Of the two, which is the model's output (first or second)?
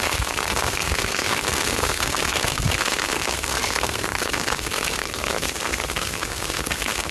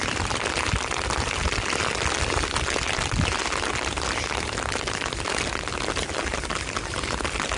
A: first